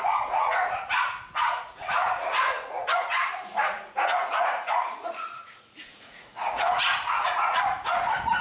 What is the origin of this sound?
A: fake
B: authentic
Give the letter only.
A